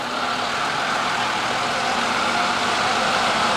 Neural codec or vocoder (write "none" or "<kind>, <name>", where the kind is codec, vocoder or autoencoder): none